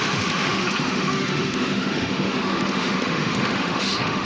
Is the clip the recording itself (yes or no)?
no